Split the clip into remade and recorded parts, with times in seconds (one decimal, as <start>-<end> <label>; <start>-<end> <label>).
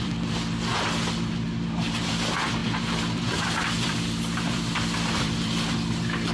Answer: 0.0-0.7 remade; 0.7-1.3 recorded; 1.3-6.3 remade